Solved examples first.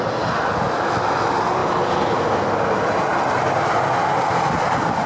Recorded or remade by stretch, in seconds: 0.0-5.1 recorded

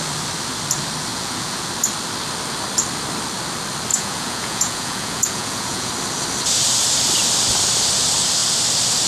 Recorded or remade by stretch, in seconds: 0.0-1.1 recorded; 1.1-1.7 remade; 1.7-3.9 recorded; 3.9-5.9 remade; 5.9-9.1 recorded

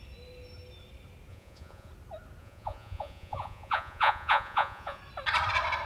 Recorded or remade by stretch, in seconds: 0.0-1.3 recorded; 1.3-1.9 remade; 1.9-2.4 recorded; 2.4-5.0 remade; 5.0-5.9 recorded

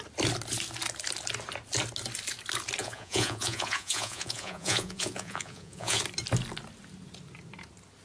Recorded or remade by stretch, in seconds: 0.0-2.8 recorded; 2.8-6.0 remade; 6.0-8.0 recorded

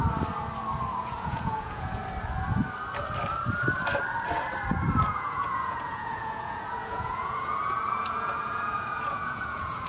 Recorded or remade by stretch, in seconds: 0.0-1.0 recorded; 1.0-2.0 remade; 2.0-5.0 recorded; 5.0-9.9 remade